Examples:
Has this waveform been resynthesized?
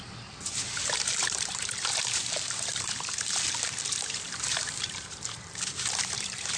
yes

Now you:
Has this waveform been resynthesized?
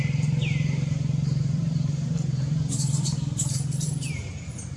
yes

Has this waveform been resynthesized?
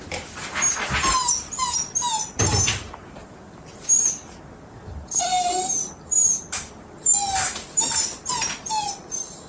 no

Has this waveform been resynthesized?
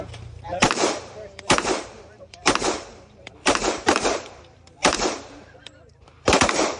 yes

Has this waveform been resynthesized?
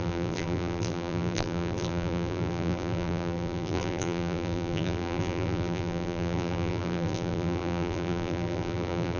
yes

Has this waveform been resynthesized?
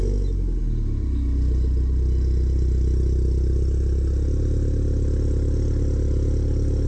no